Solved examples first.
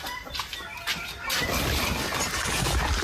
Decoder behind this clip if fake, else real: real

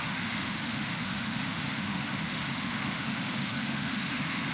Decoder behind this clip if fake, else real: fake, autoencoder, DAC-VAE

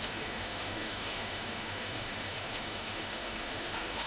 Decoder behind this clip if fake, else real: fake, autoencoder, DAC-VAE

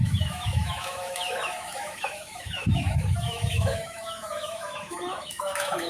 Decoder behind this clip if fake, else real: fake, autoencoder, DAC-VAE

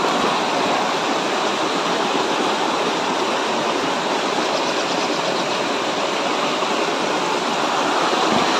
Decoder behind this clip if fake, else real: real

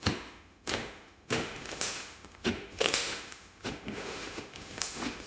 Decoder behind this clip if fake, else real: fake, autoencoder, DAC-VAE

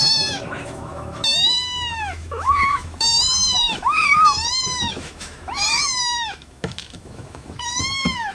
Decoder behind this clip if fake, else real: fake, autoencoder, DAC-VAE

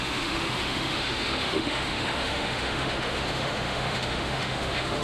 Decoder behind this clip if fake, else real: fake, autoencoder, DAC-VAE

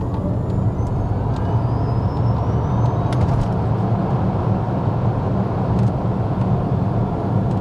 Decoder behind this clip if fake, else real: real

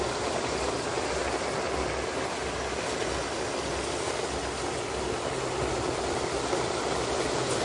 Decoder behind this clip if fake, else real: real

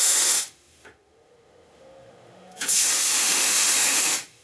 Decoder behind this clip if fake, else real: fake, autoencoder, DAC-VAE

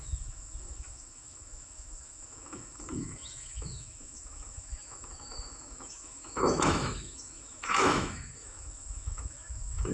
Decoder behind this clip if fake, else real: fake, autoencoder, DAC-VAE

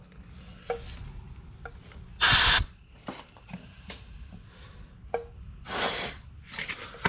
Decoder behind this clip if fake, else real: real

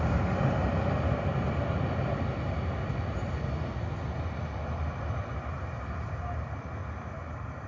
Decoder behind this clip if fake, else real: real